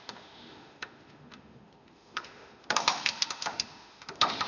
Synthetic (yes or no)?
yes